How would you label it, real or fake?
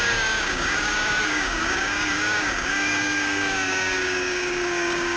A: fake